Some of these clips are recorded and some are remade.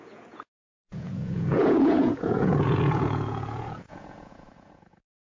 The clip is remade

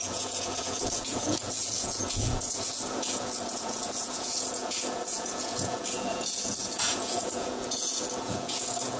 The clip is remade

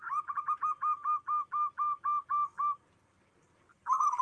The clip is recorded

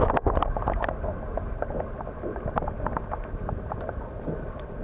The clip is recorded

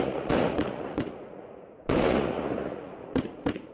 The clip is remade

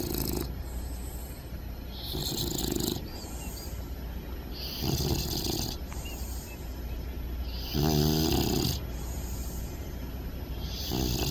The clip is recorded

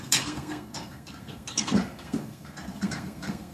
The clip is remade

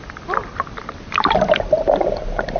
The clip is remade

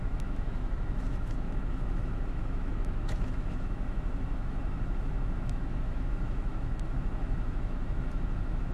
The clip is remade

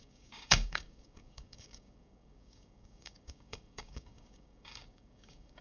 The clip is remade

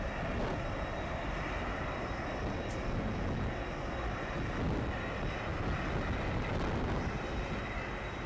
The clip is recorded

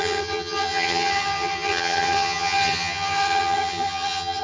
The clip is remade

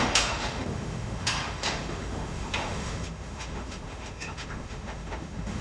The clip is remade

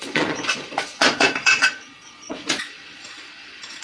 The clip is remade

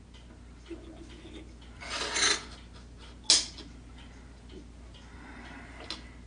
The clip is recorded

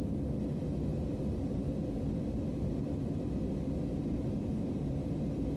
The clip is recorded